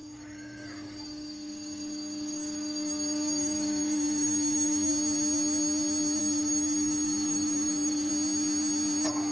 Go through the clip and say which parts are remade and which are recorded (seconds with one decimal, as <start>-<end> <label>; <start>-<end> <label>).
0.0-4.9 remade; 4.9-6.2 recorded; 6.2-8.1 remade; 8.1-9.3 recorded